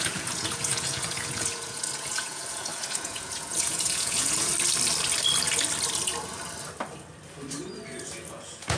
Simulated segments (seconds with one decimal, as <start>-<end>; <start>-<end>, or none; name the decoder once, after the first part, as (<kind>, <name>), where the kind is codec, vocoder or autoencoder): 0.0-4.5 (vocoder, Vocos); 8.3-8.8